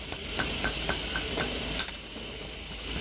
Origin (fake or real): real